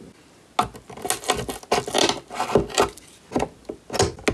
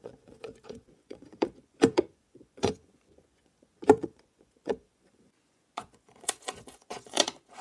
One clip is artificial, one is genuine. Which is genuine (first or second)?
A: first